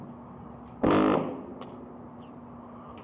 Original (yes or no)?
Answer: yes